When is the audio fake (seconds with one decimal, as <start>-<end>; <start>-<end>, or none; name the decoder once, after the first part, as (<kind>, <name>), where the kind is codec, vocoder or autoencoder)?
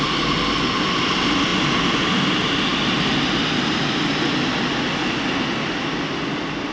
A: none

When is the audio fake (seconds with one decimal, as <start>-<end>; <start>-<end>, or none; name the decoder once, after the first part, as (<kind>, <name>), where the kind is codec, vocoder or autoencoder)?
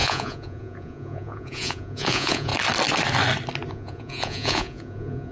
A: 0.0-2.5 (vocoder, Vocos); 3.7-5.3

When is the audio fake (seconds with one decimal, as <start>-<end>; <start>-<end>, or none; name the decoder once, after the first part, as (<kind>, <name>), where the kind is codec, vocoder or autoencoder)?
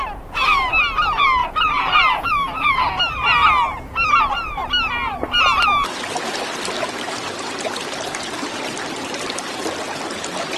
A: 1.4-3.0 (vocoder, Vocos)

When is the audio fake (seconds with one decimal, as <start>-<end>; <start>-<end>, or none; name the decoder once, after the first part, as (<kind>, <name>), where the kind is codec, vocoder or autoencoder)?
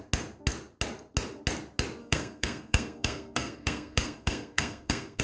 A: 2.0-5.2 (codec, SNAC)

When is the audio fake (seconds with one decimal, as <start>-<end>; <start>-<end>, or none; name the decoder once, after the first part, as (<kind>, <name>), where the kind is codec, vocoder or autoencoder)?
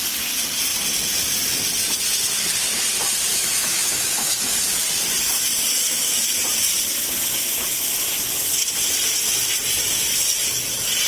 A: 3.3-4.4 (autoencoder, DAC-VAE); 5.7-6.2